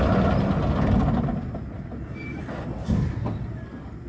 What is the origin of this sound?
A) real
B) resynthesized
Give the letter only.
A